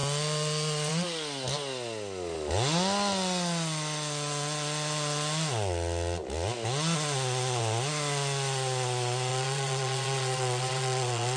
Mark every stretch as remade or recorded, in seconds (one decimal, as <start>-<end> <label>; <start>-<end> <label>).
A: 0.0-9.3 recorded; 9.3-11.4 remade